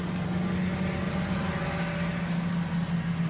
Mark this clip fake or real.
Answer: real